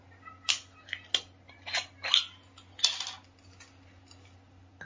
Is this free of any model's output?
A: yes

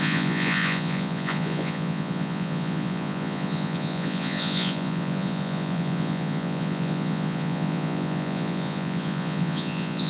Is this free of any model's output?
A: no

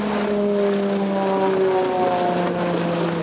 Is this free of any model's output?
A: yes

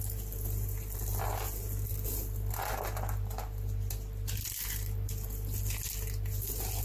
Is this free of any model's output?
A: yes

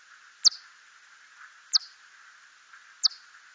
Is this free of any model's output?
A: yes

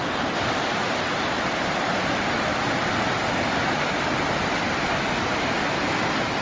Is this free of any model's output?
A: yes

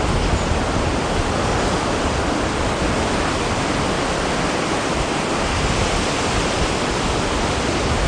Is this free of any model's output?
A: yes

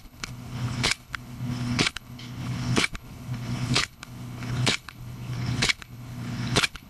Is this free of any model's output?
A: no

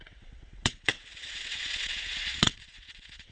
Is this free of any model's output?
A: no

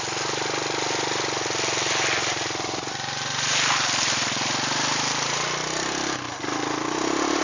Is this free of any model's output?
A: yes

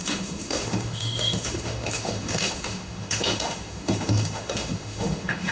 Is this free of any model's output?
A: no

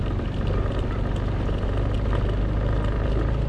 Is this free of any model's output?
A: yes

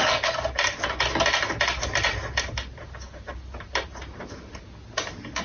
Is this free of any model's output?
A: yes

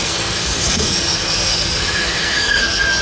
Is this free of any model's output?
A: no